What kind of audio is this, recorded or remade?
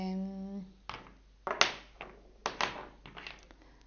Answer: recorded